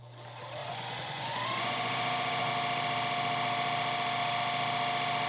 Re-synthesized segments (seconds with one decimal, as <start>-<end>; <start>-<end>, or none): 0.6-2.5